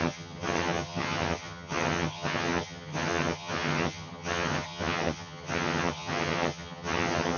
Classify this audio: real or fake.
fake